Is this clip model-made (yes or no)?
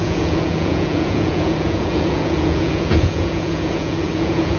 yes